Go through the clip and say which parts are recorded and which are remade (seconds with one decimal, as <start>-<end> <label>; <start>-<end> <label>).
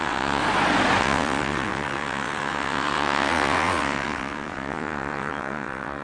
0.0-0.4 remade; 0.4-1.0 recorded; 1.0-6.0 remade